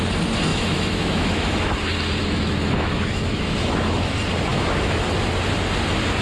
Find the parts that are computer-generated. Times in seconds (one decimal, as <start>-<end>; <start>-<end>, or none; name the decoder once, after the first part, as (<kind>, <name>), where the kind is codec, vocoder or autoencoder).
0.5-1.7 (autoencoder, DAC-VAE); 2.2-4.1; 4.5-5.1